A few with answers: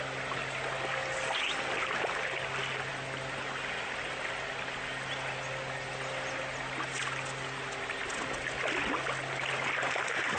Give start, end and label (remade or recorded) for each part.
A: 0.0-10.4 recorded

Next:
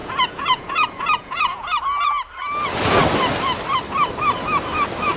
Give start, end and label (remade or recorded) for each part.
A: 0.0-1.8 remade; 1.8-5.2 recorded

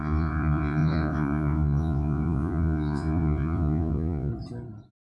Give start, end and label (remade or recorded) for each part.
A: 0.0-4.3 remade; 4.3-5.2 recorded